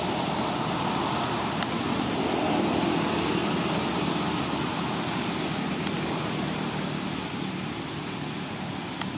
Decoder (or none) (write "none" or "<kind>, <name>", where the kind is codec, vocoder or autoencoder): none